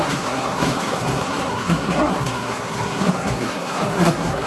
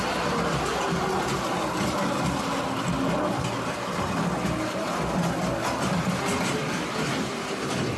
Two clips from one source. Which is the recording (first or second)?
second